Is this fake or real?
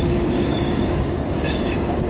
fake